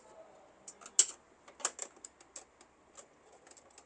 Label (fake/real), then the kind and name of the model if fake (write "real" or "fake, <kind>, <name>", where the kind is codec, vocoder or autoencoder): real